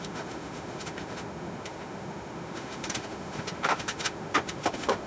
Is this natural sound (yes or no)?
no